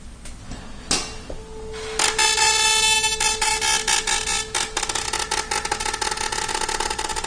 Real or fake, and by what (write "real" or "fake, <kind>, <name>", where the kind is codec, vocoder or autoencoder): real